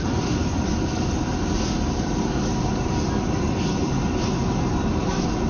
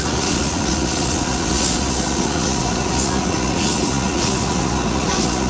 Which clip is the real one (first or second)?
first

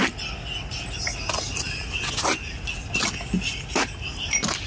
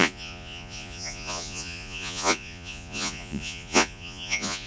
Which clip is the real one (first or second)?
first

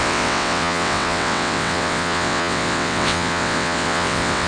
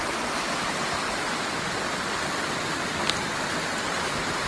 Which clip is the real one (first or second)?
second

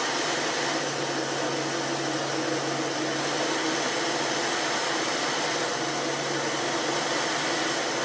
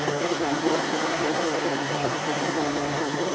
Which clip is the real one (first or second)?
first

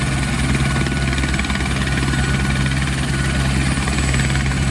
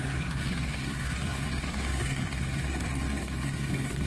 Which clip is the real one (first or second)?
first